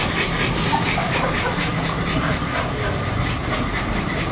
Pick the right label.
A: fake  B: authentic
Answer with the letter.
B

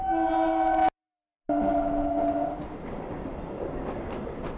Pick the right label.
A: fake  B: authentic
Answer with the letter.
B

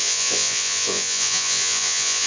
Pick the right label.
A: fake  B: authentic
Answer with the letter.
A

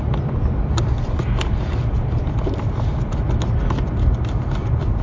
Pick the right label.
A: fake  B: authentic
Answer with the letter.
B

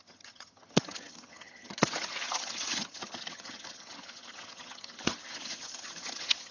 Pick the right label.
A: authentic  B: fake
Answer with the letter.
B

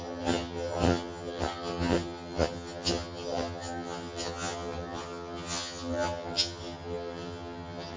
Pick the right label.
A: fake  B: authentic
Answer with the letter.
A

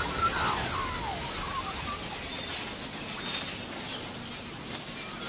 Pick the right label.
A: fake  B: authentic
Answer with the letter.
B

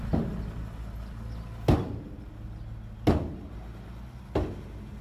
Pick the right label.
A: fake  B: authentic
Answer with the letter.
B